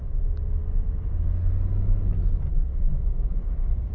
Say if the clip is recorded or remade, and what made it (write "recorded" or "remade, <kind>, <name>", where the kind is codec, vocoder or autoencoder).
recorded